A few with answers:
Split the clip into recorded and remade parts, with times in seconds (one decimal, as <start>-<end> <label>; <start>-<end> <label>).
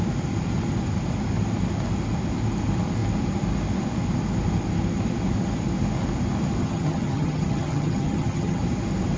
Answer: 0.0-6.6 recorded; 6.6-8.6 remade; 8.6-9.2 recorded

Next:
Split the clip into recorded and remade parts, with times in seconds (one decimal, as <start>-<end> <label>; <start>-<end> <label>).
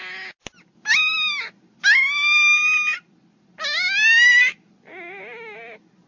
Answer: 0.0-6.1 recorded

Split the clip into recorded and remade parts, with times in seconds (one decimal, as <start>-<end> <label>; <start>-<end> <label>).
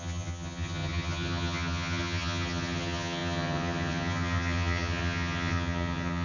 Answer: 0.0-6.2 remade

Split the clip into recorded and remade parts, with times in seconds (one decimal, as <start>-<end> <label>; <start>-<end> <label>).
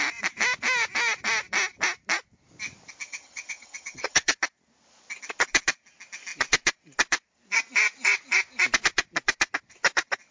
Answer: 0.0-3.0 recorded; 3.0-4.3 remade; 4.3-10.3 recorded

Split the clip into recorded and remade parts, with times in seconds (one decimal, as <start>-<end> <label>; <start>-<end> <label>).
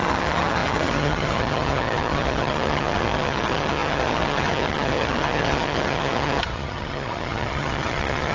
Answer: 0.0-8.3 remade